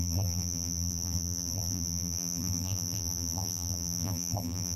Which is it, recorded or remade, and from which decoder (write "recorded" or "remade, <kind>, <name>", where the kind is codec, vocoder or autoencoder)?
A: remade, vocoder, BigVGAN v2